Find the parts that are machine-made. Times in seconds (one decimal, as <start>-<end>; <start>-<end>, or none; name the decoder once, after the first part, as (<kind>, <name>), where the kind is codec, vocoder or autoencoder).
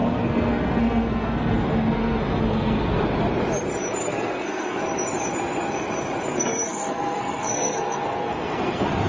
0.0-3.0 (codec, SNAC); 4.0-4.8; 6.3-9.1